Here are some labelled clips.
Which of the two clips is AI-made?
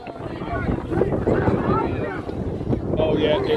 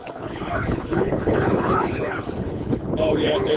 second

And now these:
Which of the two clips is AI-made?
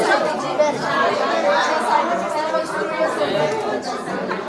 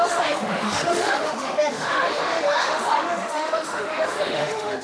second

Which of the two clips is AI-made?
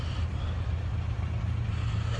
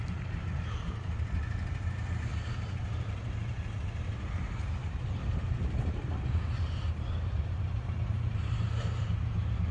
second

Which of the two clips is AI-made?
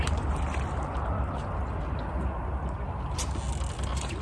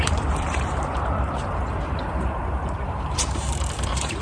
second